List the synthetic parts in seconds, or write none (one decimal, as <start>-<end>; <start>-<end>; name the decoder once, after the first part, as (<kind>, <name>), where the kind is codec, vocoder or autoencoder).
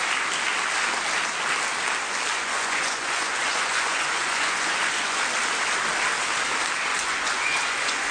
2.3-5.2 (vocoder, Vocos); 6.9-8.1